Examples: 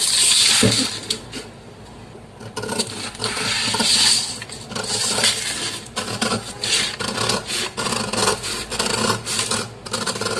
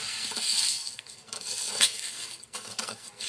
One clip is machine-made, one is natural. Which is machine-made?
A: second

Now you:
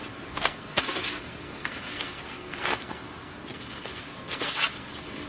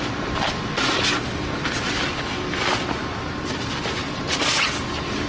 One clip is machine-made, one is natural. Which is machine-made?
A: first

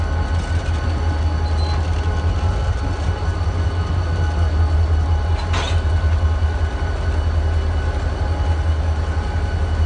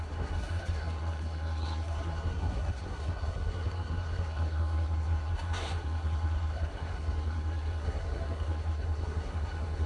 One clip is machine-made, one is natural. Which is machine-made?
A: second